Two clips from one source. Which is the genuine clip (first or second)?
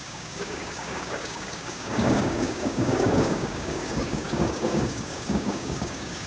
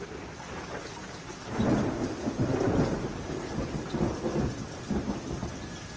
second